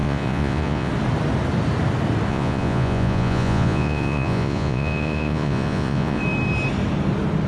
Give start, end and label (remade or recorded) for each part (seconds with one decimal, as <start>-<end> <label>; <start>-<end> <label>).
0.0-0.9 remade; 0.9-2.3 recorded; 2.3-6.2 remade; 6.2-7.5 recorded

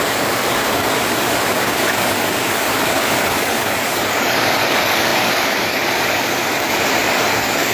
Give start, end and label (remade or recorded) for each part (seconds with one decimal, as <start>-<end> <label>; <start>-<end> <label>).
0.0-7.7 remade

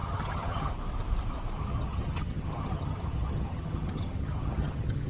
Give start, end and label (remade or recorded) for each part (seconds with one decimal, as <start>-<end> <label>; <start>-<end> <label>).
0.0-0.7 remade; 0.7-1.6 recorded; 1.6-5.1 remade

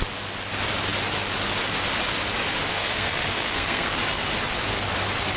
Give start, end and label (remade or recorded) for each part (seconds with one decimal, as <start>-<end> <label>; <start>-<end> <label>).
0.0-2.7 recorded; 2.7-4.0 remade; 4.0-5.4 recorded

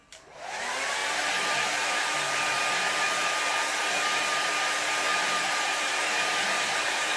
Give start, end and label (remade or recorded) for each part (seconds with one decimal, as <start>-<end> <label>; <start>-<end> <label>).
0.0-1.0 recorded; 1.0-2.1 remade; 2.1-5.1 recorded; 5.1-7.2 remade